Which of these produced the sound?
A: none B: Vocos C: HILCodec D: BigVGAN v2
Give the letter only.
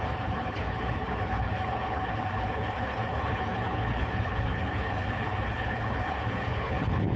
C